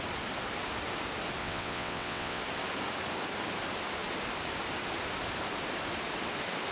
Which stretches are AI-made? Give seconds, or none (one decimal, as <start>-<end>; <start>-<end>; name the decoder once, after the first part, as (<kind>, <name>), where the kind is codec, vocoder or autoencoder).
1.4-2.4 (vocoder, WaveNeXt)

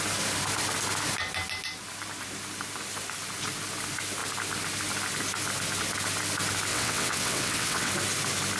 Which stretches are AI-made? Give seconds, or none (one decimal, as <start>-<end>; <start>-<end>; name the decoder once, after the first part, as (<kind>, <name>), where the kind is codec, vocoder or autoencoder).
6.7-7.9 (vocoder, WaveNeXt)

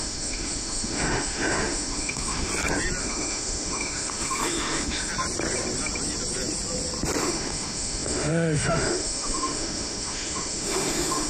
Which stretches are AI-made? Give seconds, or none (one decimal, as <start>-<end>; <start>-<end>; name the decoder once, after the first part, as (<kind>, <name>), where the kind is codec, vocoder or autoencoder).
0.0-2.5 (autoencoder, DAC-VAE); 3.0-5.1; 7.2-11.3

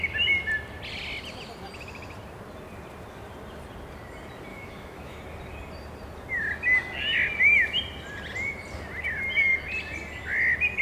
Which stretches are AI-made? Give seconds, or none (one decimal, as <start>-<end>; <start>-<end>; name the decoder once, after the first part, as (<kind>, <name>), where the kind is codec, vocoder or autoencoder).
4.5-5.2 (autoencoder, DAC-VAE)

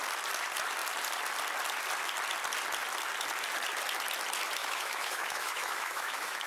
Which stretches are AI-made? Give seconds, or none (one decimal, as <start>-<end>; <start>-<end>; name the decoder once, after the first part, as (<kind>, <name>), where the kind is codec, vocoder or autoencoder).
4.6-6.5 (autoencoder, DAC-VAE)

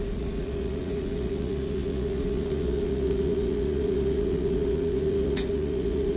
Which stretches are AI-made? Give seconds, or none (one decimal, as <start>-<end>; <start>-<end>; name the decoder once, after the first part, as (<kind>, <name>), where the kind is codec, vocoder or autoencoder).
0.0-6.2 (vocoder, Vocos)